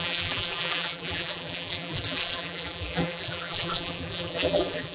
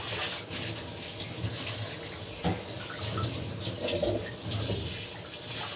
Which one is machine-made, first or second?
first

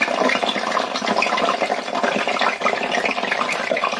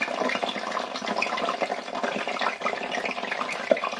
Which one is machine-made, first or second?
first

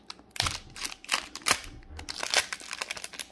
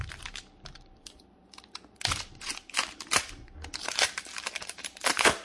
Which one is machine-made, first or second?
second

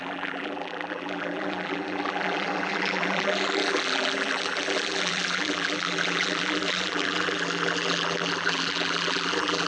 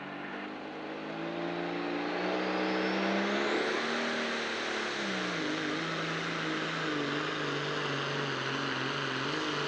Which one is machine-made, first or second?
first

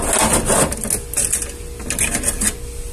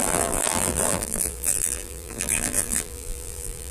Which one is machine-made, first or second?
second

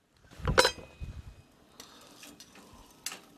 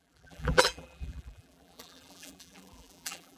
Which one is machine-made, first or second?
second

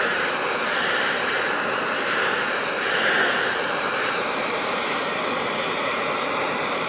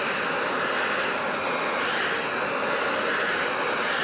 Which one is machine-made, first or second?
first